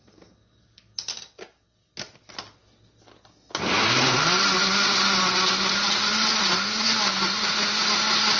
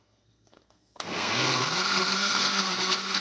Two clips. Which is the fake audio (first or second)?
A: second